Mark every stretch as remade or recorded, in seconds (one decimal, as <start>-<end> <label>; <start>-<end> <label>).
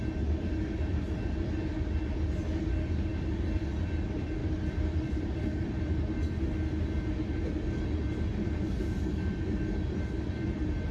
0.0-4.4 recorded; 4.4-5.1 remade; 5.1-10.9 recorded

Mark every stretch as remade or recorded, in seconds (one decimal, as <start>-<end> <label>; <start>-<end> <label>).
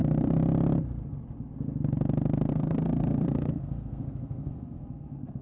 0.0-2.5 recorded; 2.5-5.4 remade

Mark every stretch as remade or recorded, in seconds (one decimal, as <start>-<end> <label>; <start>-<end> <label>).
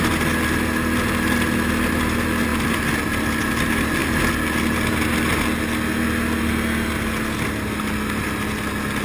0.0-9.0 recorded